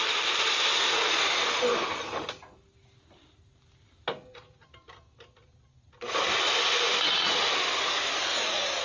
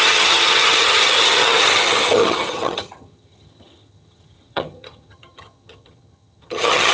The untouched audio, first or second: first